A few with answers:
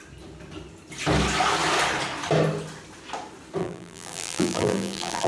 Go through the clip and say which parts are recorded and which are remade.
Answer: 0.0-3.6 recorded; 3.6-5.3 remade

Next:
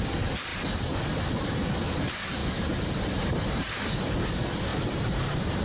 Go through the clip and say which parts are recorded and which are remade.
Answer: 0.0-0.5 recorded; 0.5-1.3 remade; 1.3-2.4 recorded; 2.4-4.0 remade; 4.0-4.7 recorded; 4.7-5.6 remade

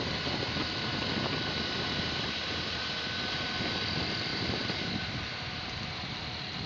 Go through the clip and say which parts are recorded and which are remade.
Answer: 0.0-2.4 recorded; 2.4-3.4 remade; 3.4-4.3 recorded; 4.3-6.1 remade; 6.1-6.7 recorded

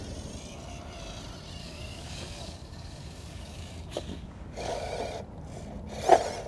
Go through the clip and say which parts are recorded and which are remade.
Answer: 0.0-1.6 recorded; 1.6-4.9 remade; 4.9-6.5 recorded